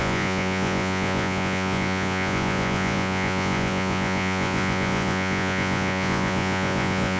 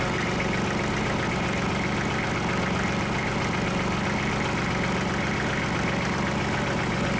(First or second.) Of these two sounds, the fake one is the first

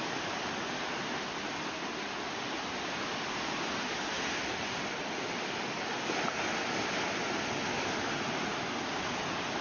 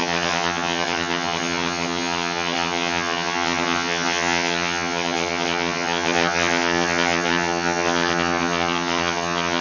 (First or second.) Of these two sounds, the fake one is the second